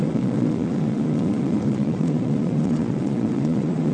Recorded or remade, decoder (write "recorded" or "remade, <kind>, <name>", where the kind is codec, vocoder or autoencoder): remade, vocoder, Vocos